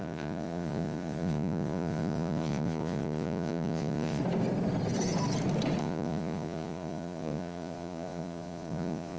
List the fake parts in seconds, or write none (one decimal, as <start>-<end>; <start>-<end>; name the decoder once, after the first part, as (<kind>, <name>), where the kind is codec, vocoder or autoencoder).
0.0-4.2 (vocoder, Vocos); 5.8-9.2